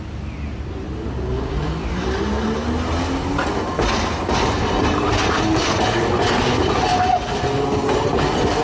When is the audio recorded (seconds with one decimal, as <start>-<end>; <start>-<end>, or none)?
0.0-8.6